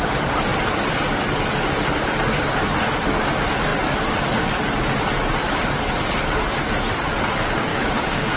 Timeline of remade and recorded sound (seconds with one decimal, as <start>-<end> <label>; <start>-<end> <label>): 0.0-7.7 recorded; 7.7-8.4 remade